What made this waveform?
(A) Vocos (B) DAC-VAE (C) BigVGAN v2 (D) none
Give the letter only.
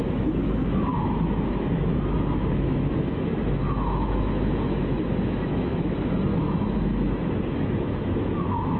B